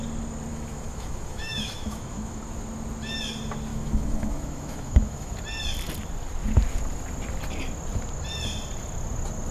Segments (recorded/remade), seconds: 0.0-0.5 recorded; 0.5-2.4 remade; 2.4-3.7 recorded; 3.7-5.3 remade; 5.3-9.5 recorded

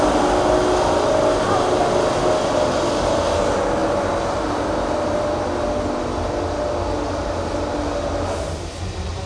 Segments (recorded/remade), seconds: 0.0-9.3 recorded